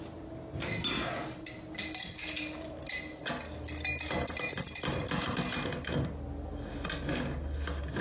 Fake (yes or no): no